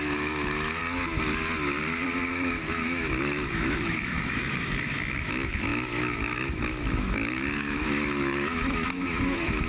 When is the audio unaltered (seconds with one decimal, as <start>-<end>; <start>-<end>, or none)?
0.8-2.3